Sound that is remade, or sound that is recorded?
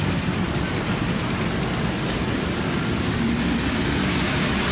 recorded